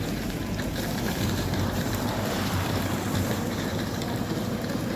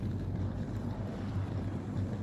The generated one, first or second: first